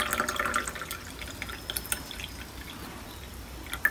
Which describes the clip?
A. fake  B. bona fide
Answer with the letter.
B